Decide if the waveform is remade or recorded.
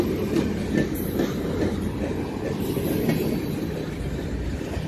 recorded